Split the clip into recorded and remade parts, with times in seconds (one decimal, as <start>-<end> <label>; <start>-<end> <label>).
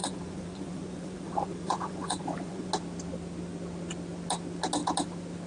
0.0-2.7 remade; 2.7-5.5 recorded